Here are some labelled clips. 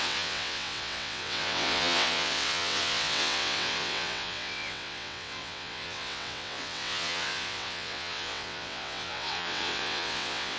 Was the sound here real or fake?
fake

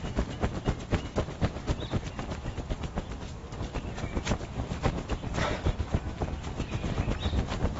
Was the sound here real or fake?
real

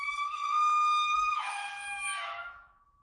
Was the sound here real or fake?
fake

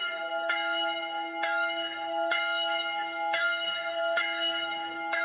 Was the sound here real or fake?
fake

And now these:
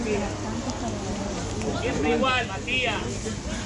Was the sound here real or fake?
real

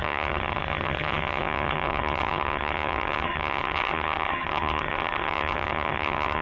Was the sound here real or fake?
fake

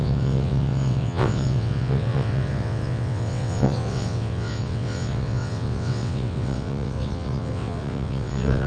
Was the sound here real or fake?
fake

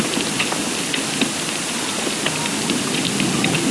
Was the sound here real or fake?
real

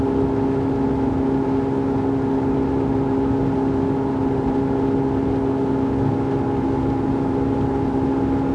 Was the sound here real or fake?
real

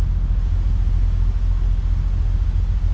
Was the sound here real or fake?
real